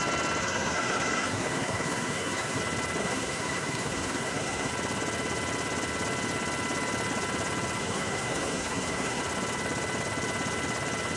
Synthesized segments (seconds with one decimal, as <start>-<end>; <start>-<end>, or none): 0.4-2.6; 3.0-4.7; 7.8-9.2